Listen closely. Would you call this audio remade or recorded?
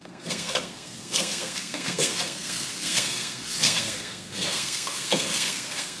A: remade